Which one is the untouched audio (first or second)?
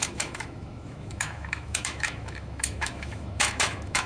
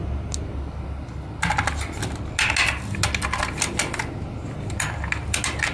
second